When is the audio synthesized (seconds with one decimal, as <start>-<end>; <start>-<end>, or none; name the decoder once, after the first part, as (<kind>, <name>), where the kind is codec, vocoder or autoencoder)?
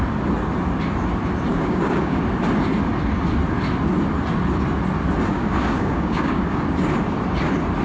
1.5-2.2 (codec, DAC); 5.3-6.6